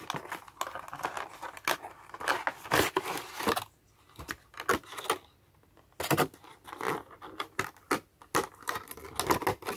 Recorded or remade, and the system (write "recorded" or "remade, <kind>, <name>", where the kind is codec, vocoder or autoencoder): recorded